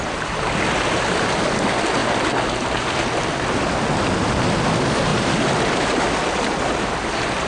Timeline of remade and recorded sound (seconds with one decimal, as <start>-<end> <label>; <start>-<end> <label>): 0.0-7.5 recorded